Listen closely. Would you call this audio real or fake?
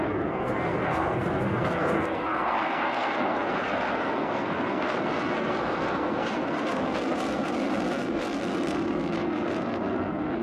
fake